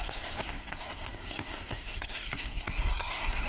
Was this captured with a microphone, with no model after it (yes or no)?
no